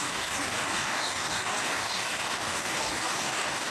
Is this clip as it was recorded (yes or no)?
no